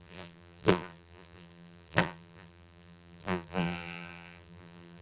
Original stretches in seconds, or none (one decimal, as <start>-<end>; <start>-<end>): none